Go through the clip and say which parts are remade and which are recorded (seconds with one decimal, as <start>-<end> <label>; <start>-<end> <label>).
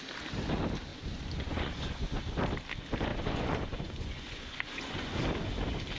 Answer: 0.0-0.9 recorded; 0.9-2.2 remade; 2.2-3.1 recorded; 3.1-5.2 remade; 5.2-6.0 recorded